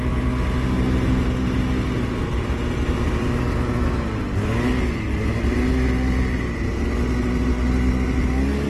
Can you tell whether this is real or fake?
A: real